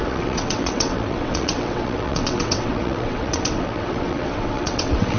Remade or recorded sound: remade